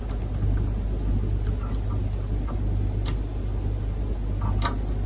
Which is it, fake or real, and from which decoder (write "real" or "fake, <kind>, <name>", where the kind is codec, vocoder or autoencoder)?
real